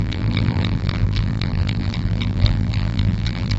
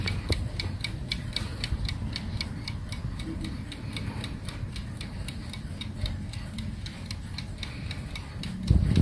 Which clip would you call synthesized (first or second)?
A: first